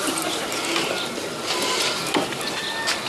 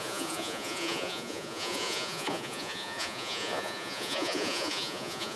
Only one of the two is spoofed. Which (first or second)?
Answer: second